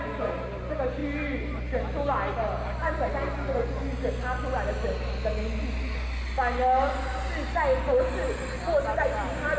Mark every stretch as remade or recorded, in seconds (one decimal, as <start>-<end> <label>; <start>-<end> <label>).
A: 0.0-9.6 recorded